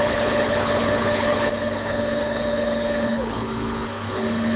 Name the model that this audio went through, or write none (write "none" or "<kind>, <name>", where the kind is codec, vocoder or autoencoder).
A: codec, HILCodec